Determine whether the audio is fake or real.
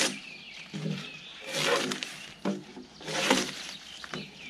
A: fake